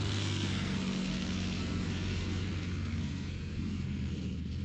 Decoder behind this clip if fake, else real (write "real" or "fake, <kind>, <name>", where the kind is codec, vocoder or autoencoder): fake, codec, SNAC